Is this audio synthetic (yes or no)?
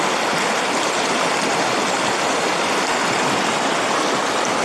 no